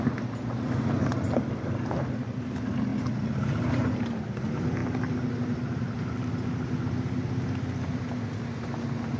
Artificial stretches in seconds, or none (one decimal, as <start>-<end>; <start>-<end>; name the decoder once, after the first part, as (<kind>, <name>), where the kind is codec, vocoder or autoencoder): none